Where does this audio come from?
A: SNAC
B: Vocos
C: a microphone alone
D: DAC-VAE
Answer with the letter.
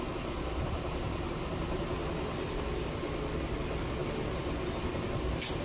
C